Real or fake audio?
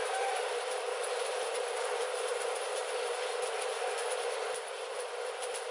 real